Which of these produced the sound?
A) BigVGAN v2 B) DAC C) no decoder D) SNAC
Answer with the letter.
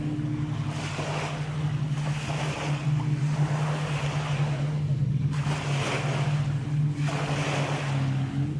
C